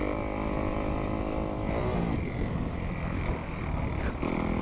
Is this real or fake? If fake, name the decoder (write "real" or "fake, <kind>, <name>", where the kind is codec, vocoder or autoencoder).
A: real